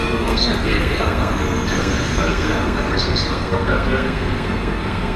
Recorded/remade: remade